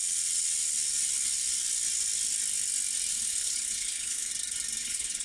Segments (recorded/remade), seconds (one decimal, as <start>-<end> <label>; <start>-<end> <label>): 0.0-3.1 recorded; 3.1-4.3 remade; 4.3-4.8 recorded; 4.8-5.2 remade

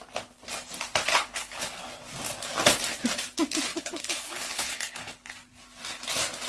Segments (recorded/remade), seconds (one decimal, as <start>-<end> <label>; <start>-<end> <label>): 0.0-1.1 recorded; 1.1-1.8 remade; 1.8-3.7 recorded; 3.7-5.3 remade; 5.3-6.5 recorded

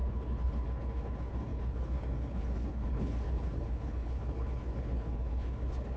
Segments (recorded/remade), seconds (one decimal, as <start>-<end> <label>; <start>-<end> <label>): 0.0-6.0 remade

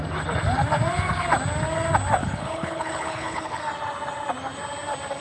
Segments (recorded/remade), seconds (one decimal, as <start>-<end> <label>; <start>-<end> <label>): 0.0-2.2 recorded; 2.2-3.6 remade; 3.6-5.2 recorded

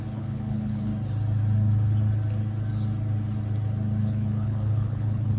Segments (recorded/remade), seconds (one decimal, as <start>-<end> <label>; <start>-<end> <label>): 0.0-0.9 remade; 0.9-4.1 recorded; 4.1-5.4 remade